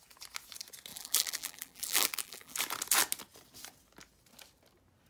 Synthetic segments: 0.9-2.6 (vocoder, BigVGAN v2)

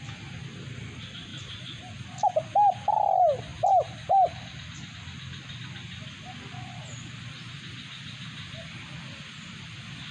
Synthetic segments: none